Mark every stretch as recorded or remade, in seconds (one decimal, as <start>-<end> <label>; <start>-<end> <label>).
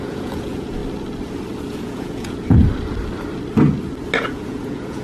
0.0-0.8 remade; 0.8-1.6 recorded; 1.6-2.6 remade; 2.6-4.2 recorded; 4.2-5.0 remade